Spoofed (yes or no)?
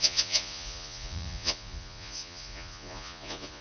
yes